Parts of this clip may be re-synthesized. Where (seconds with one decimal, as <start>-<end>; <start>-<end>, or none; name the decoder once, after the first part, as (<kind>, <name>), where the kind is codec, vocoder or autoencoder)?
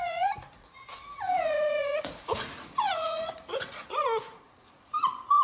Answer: 0.0-5.4 (vocoder, Vocos)